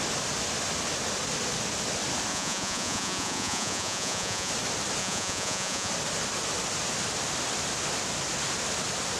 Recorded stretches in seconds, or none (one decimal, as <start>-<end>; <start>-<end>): 0.0-2.3; 4.5-5.0; 5.9-9.2